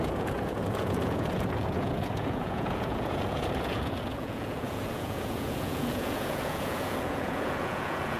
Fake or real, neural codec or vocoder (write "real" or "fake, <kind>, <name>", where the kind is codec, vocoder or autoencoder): fake, vocoder, Vocos